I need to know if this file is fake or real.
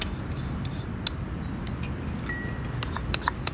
real